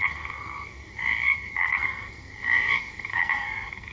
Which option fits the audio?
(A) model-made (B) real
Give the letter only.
A